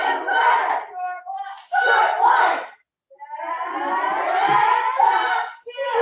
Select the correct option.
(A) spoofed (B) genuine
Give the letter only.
B